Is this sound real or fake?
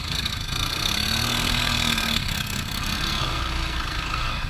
fake